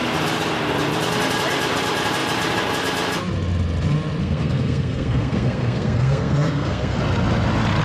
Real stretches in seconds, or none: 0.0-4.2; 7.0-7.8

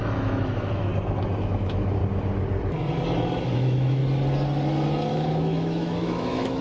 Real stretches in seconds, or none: 0.9-1.4; 2.0-3.4; 4.0-5.1

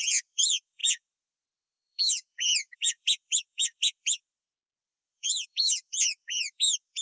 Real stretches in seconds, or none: none

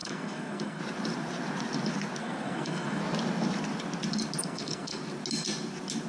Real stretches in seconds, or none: 0.8-2.2; 3.0-4.4; 5.0-6.1

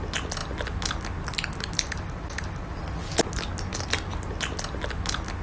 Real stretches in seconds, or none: 0.0-5.4

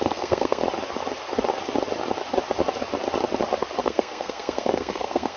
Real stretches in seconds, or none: 0.6-3.8

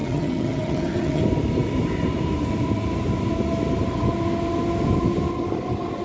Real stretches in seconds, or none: 1.2-6.0

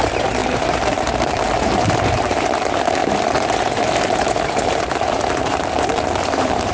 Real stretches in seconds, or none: none